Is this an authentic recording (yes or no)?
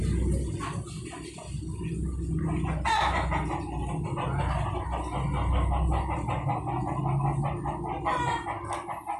yes